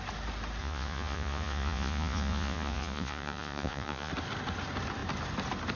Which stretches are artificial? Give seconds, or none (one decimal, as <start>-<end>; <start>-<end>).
0.6-4.1